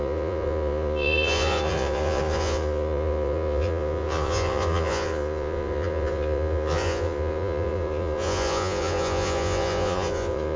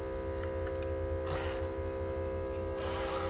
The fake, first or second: first